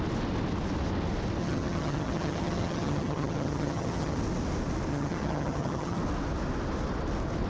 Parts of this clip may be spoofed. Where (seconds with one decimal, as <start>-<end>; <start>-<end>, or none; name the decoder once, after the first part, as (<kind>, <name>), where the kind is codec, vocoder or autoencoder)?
1.4-4.2 (vocoder, HiFi-GAN); 4.9-6.0